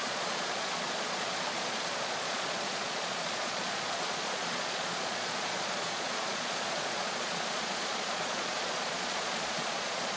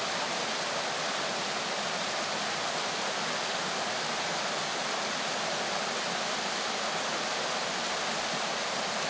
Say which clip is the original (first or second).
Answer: second